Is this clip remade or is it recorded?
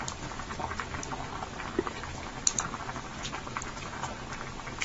recorded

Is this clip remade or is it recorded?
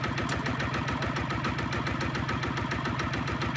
recorded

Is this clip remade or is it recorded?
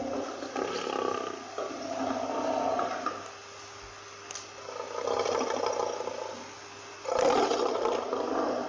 recorded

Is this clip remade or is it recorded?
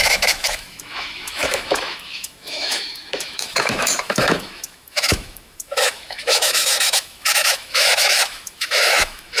remade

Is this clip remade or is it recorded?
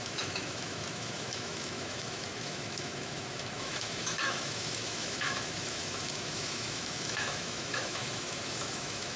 remade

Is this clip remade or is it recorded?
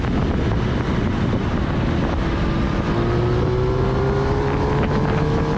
recorded